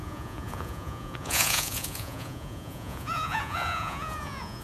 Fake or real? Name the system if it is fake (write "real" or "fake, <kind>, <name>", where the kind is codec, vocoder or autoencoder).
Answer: fake, vocoder, Vocos